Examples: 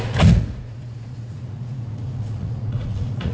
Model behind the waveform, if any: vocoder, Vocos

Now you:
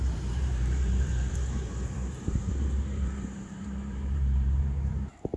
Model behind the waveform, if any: vocoder, BigVGAN v2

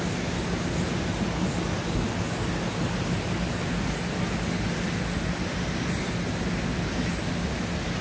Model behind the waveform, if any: none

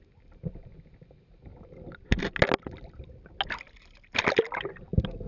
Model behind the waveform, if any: none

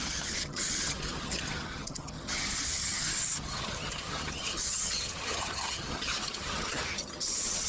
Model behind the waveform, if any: vocoder, HiFi-GAN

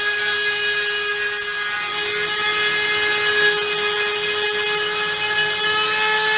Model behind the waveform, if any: none